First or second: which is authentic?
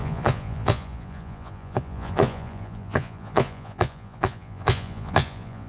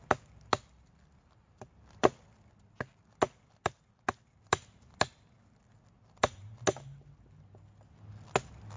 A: second